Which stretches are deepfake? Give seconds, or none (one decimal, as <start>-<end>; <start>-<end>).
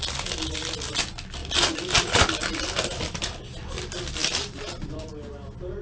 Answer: 1.4-3.3; 4.2-5.1